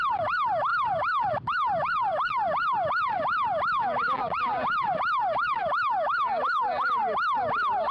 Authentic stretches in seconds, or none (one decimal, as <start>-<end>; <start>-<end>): 7.0-7.9